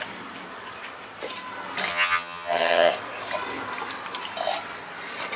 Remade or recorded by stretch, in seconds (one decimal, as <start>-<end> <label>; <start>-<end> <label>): 0.0-1.9 recorded; 1.9-2.9 remade; 2.9-5.4 recorded